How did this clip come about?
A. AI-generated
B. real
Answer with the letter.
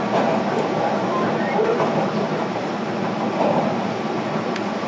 B